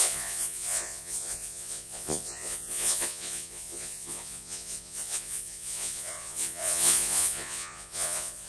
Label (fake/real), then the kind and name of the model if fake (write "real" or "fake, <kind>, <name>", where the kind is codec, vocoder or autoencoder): fake, vocoder, Vocos